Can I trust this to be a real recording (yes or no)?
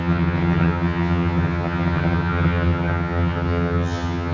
no